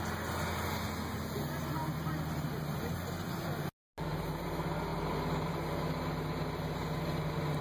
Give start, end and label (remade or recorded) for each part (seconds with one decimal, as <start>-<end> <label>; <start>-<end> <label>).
0.0-7.6 recorded